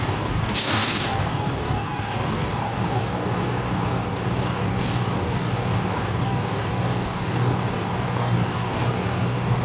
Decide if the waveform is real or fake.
fake